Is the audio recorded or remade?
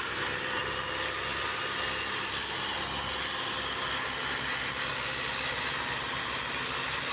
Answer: recorded